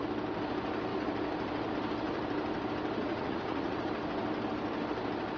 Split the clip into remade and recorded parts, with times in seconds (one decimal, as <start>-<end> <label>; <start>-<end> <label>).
0.0-3.0 recorded; 3.0-3.9 remade; 3.9-5.4 recorded